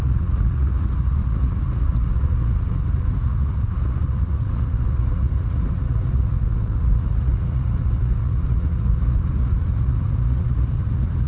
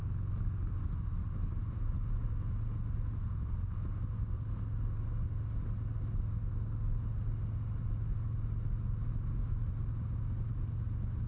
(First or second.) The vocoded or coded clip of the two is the first